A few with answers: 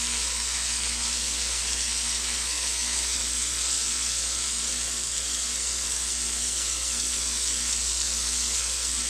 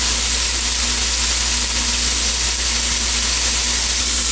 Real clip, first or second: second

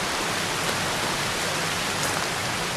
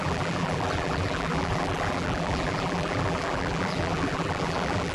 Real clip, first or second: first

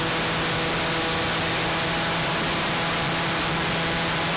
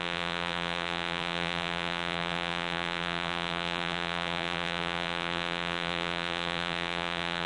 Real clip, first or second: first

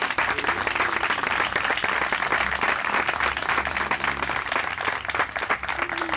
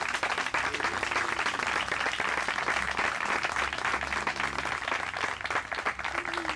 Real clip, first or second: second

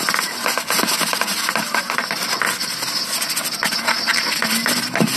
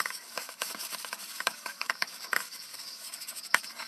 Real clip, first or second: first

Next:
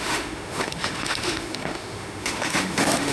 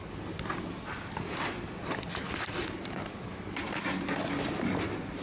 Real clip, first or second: second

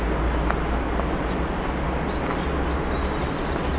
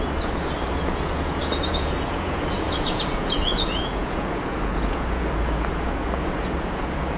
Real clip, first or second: first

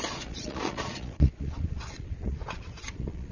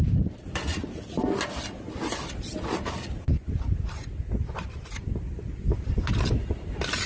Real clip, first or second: second